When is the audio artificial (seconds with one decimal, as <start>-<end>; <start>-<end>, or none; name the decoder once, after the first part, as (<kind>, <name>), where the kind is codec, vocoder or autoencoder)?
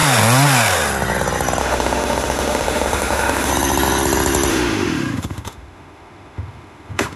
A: 1.6-3.5 (autoencoder, DAC-VAE); 4.5-7.2